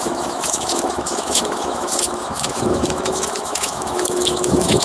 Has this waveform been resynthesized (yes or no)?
yes